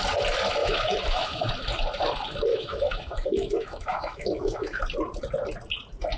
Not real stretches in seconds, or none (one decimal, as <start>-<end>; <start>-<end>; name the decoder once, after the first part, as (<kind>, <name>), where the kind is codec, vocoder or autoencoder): 0.6-1.5 (autoencoder, DAC-VAE); 2.5-4.8